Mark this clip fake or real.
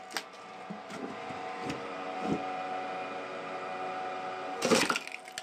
real